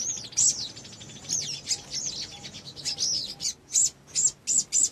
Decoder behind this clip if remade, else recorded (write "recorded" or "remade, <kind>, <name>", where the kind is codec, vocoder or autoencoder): recorded